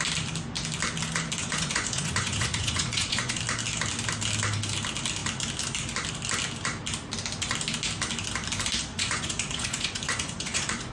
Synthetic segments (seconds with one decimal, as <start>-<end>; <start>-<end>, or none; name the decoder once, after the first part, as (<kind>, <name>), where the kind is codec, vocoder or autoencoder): 1.4-3.4 (vocoder, Vocos); 8.9-10.9